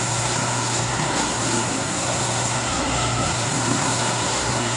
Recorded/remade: remade